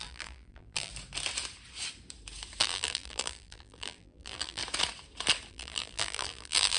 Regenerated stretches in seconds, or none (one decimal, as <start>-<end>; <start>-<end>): 0.0-0.9; 2.6-4.6; 5.5-6.8